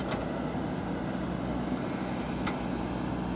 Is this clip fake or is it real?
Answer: real